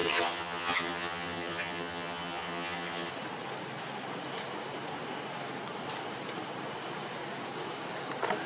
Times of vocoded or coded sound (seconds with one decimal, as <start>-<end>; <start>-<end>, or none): 0.0-3.1